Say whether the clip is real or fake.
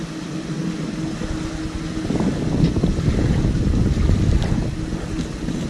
real